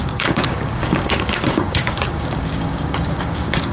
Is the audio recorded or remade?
remade